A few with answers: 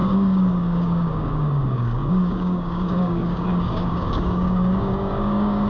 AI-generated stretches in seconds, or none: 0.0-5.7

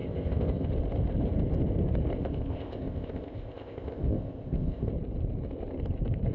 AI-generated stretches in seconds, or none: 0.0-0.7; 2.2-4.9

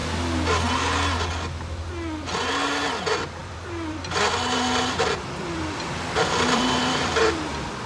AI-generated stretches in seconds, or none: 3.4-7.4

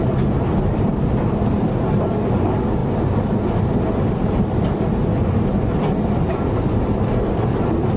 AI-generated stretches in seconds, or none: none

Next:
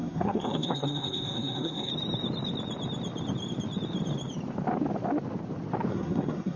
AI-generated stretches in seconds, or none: 0.0-1.9; 5.9-6.6

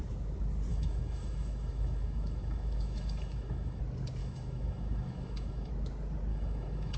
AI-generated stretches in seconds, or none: 0.7-3.8; 4.2-5.7; 6.3-7.0